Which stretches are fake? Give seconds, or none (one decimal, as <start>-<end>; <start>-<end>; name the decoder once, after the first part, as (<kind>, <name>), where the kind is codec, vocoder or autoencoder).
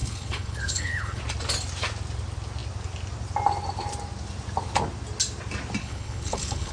0.0-1.2 (codec, HILCodec); 5.8-6.7